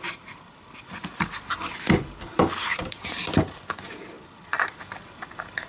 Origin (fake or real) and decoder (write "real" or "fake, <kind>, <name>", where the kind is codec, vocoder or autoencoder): real